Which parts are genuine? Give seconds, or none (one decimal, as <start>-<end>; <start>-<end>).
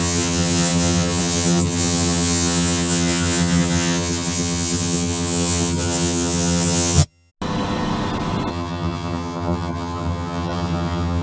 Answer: 7.3-8.5